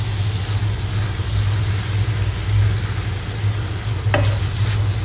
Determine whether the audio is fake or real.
real